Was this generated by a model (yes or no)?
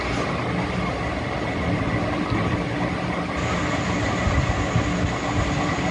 no